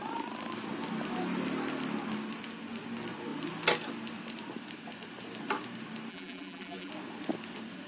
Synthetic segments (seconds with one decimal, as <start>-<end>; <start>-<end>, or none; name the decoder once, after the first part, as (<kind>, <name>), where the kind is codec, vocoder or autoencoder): 6.1-6.9 (vocoder, BigVGAN v2)